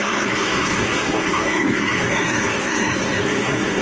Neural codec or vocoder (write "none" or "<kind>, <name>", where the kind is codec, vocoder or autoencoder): codec, SNAC